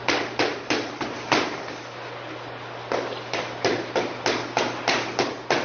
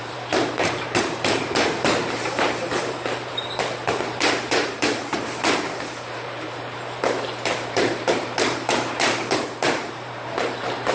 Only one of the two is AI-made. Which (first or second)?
second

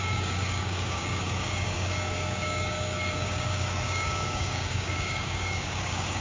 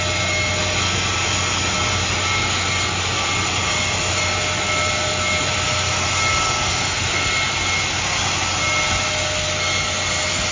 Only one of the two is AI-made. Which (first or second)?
first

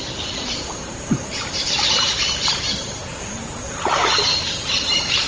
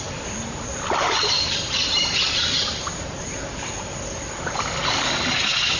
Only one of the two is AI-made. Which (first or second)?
first